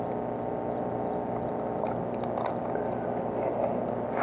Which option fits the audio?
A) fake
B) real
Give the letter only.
B